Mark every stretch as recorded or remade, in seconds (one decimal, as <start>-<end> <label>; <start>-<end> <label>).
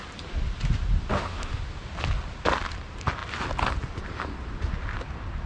0.0-1.1 recorded; 1.1-1.6 remade; 1.6-5.5 recorded